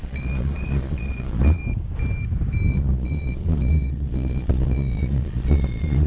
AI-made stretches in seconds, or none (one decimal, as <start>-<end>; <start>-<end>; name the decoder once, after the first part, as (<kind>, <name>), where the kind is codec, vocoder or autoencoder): 0.0-1.6 (vocoder, Vocos); 2.7-6.1